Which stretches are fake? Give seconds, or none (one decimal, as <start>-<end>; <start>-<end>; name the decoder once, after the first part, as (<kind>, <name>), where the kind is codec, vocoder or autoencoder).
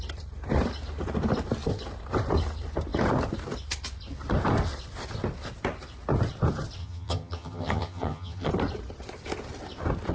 6.8-8.5 (vocoder, HiFi-GAN)